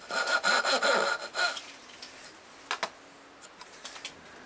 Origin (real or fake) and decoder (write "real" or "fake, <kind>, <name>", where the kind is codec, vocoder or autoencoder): real